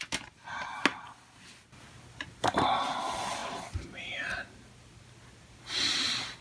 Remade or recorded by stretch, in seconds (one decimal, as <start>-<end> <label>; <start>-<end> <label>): 0.0-6.4 recorded

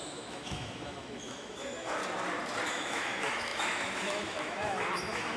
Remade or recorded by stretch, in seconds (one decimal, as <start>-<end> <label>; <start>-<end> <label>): 0.0-2.0 remade; 2.0-2.7 recorded; 2.7-5.4 remade

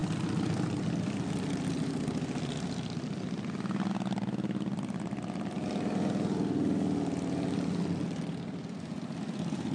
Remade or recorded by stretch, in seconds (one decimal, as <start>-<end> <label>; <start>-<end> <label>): 0.0-9.7 recorded

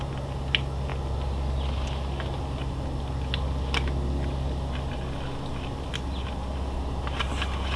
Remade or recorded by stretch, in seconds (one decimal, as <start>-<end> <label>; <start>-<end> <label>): 0.0-7.8 recorded

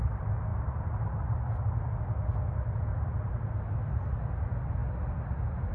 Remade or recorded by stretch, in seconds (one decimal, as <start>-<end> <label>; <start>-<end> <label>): 0.0-5.7 recorded